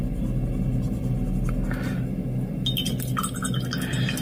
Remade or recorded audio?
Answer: recorded